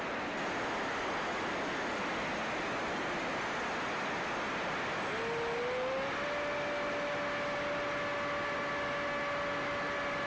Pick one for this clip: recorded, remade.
recorded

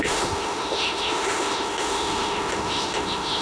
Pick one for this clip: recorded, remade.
remade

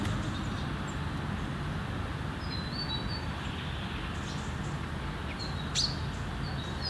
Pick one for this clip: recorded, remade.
recorded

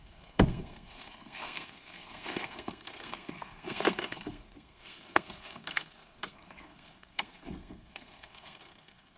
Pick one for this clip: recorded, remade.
remade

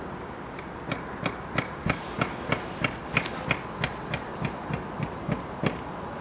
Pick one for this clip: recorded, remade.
recorded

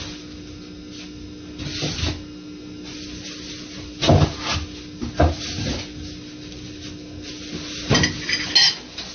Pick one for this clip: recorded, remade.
recorded